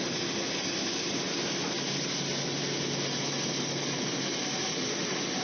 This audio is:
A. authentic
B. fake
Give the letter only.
A